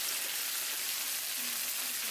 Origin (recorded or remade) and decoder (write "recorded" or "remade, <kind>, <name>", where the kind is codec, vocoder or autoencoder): recorded